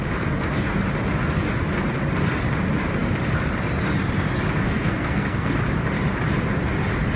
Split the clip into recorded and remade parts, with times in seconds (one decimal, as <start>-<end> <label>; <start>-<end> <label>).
0.0-4.6 recorded; 4.6-5.5 remade; 5.5-7.2 recorded